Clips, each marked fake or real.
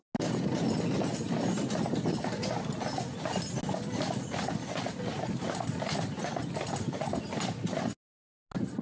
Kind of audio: real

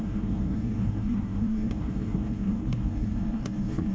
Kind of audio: fake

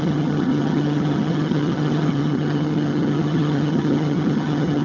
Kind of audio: fake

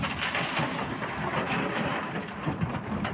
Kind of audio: real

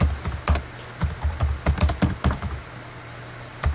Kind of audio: real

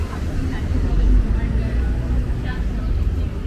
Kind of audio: real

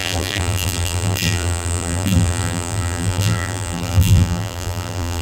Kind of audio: fake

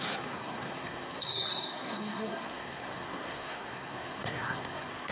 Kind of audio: fake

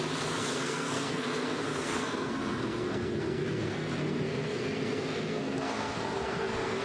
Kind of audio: fake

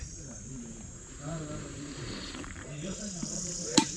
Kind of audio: fake